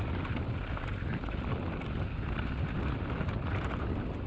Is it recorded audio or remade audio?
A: recorded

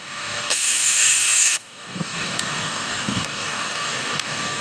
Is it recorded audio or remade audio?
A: remade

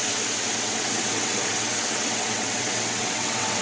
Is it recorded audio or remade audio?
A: remade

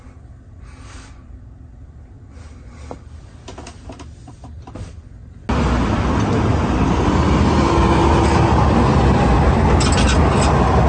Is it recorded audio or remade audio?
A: recorded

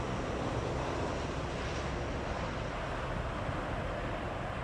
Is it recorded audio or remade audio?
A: recorded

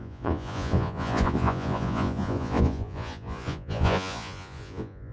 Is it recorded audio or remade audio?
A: remade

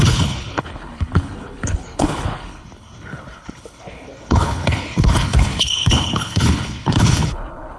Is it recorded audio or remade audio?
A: remade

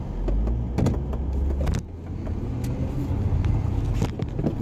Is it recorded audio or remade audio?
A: recorded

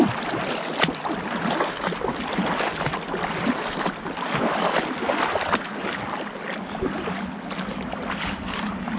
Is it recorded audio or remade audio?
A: recorded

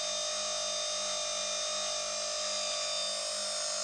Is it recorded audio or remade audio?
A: recorded